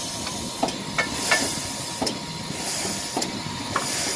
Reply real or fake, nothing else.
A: real